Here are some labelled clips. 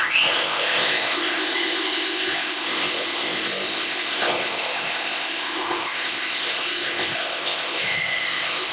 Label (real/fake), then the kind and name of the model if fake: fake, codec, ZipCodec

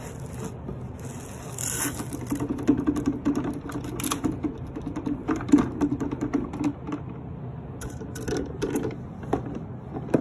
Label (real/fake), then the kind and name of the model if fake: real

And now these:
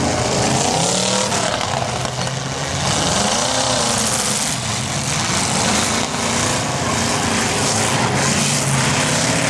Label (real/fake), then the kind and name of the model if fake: real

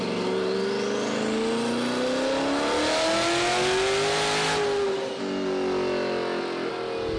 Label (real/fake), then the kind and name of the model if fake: real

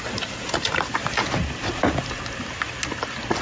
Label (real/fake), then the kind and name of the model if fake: real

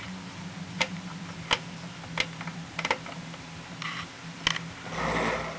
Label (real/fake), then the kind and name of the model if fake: real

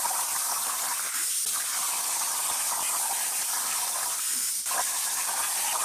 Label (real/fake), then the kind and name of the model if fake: real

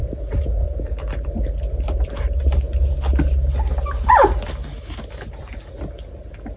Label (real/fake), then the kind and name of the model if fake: real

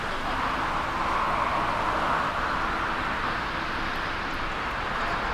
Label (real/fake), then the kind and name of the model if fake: real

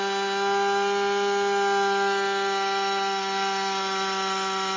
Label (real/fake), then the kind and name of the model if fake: real